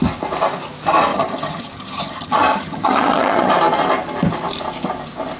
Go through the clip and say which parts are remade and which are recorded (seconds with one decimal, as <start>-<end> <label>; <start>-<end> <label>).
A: 0.0-1.1 recorded; 1.1-3.5 remade; 3.5-5.4 recorded